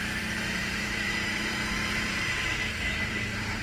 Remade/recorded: remade